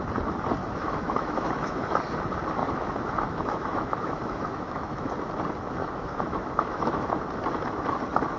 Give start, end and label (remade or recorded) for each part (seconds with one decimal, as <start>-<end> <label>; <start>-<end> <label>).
0.0-0.6 recorded; 0.6-2.0 remade; 2.0-2.6 recorded; 2.6-5.1 remade; 5.1-5.8 recorded; 5.8-7.2 remade; 7.2-8.4 recorded